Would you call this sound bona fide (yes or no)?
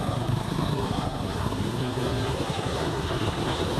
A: no